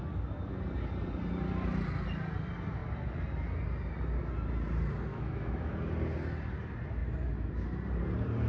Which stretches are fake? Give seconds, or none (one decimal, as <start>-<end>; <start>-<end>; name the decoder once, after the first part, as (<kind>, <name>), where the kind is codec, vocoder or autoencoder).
5.1-5.7 (autoencoder, DAC-VAE)